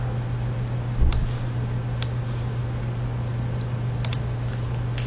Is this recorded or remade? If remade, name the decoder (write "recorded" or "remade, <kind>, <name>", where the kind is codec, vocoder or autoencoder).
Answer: remade, vocoder, BigVGAN v2